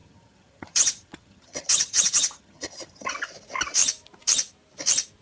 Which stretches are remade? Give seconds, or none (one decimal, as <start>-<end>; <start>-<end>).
0.0-3.1